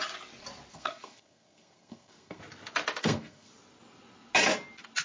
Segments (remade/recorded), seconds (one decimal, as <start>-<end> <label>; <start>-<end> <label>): 0.0-0.7 recorded; 0.7-2.4 remade; 2.4-3.0 recorded; 3.0-3.5 remade; 3.5-5.0 recorded